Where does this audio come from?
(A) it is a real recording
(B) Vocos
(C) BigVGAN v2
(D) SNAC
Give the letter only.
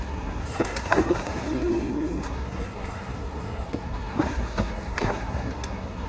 D